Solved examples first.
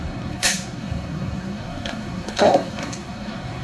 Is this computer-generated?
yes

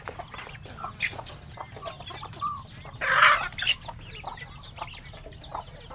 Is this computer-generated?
no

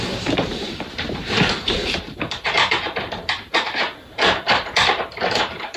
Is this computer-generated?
yes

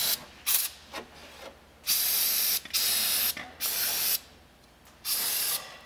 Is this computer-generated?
no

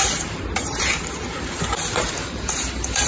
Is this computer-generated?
yes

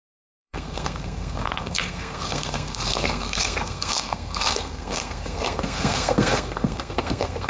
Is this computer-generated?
yes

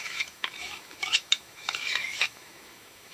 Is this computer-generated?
yes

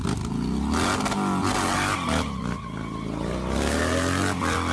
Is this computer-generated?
no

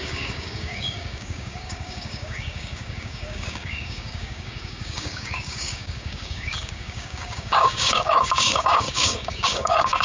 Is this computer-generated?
yes